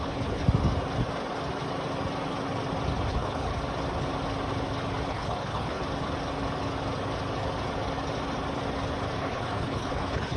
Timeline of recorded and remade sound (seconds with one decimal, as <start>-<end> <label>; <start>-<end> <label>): 0.0-0.4 remade; 0.4-3.1 recorded; 3.1-3.5 remade; 3.5-5.1 recorded; 5.1-5.8 remade; 5.8-9.2 recorded; 9.2-10.4 remade